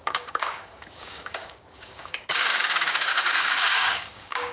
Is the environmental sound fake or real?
fake